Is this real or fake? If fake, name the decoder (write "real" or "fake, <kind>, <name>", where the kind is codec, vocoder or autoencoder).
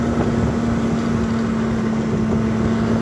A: real